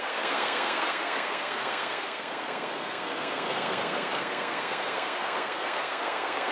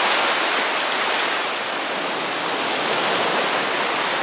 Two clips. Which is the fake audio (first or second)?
first